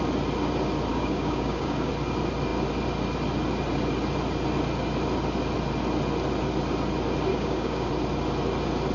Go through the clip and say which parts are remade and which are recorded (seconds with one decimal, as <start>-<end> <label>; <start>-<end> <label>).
0.0-0.9 recorded; 0.9-1.9 remade; 1.9-7.3 recorded; 7.3-7.9 remade; 7.9-8.9 recorded